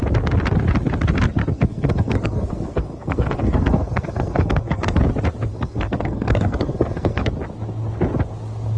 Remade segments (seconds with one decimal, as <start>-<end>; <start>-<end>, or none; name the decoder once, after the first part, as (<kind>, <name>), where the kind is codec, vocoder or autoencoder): 1.4-5.0 (codec, SNAC); 5.5-7.3